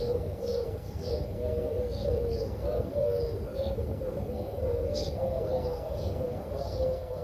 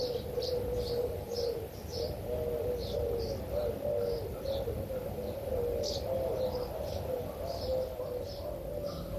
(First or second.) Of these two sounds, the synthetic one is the first